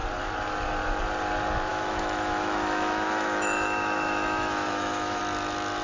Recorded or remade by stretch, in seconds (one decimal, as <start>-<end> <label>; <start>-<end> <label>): 0.0-1.7 recorded; 1.7-5.2 remade; 5.2-5.8 recorded